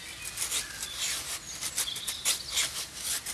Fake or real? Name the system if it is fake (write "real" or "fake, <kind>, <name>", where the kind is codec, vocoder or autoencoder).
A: real